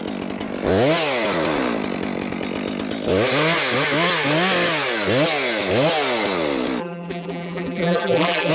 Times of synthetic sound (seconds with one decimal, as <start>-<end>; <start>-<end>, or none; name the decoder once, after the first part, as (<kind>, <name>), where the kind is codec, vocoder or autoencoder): 6.8-8.5 (vocoder, BigVGAN v2)